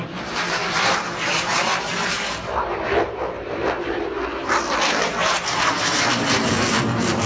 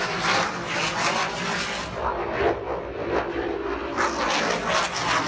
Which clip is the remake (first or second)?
first